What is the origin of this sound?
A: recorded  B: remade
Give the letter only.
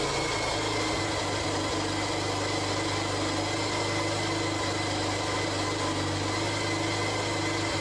A